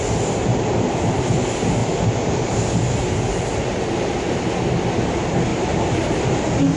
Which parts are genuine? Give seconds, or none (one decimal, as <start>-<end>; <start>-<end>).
0.0-0.5; 1.2-1.8; 2.5-3.3; 4.5-6.8